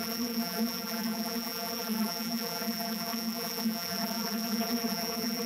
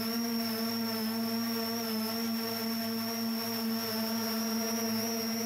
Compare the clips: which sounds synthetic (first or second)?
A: first